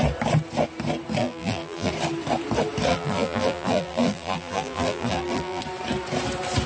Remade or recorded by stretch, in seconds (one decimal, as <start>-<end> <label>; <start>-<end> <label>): 0.0-1.2 recorded; 1.2-1.9 remade; 1.9-2.9 recorded; 2.9-5.6 remade; 5.6-6.7 recorded